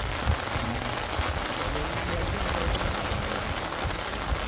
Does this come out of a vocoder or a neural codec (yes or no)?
no